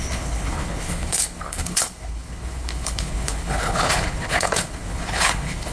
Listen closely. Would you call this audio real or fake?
fake